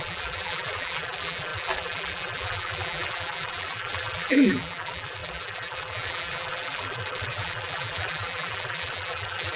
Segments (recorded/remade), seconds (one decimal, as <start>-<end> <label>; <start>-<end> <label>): 0.0-9.6 remade